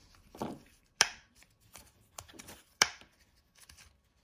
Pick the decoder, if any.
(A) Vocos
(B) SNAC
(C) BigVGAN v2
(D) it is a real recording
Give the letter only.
C